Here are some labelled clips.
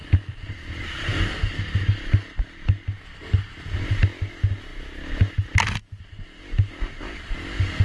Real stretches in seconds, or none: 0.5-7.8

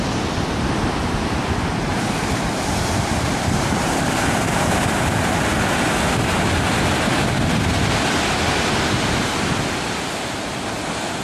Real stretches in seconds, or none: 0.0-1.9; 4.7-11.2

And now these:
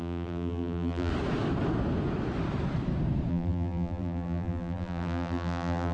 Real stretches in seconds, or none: 1.1-3.3